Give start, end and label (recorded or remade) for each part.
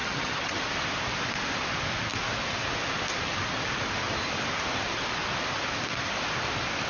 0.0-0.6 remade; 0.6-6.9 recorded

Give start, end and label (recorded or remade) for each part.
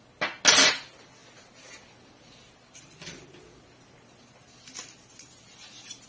0.0-6.1 recorded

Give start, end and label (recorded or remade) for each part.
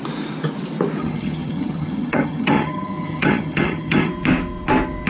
0.0-1.0 recorded; 1.0-4.1 remade; 4.1-5.1 recorded